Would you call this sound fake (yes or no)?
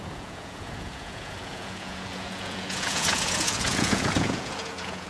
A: yes